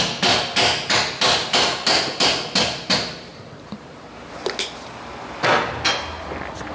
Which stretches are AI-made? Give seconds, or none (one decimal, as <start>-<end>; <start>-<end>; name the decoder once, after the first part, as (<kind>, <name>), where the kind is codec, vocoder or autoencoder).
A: 3.3-4.0 (vocoder, BigVGAN v2)